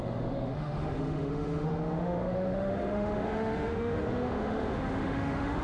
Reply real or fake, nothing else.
fake